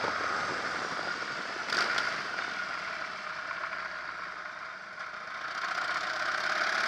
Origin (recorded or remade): recorded